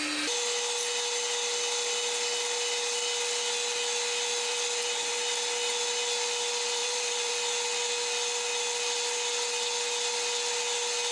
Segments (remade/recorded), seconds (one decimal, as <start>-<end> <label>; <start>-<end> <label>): 0.0-4.5 recorded; 4.5-5.1 remade; 5.1-6.8 recorded; 6.8-7.3 remade; 7.3-11.1 recorded